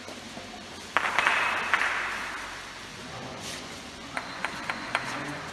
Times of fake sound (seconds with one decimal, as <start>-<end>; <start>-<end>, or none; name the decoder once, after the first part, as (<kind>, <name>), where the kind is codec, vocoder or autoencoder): 2.9-5.5 (vocoder, Vocos)